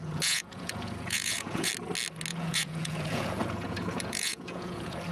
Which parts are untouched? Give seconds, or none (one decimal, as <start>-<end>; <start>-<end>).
1.7-2.3